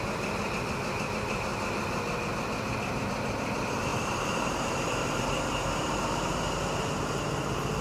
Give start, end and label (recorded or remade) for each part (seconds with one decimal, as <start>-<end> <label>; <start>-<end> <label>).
0.0-3.9 recorded; 3.9-6.4 remade; 6.4-7.8 recorded